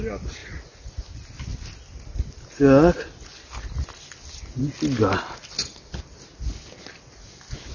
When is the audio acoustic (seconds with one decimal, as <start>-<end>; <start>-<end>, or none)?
0.0-0.4; 1.0-7.7